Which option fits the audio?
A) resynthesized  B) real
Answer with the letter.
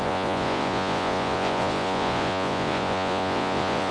A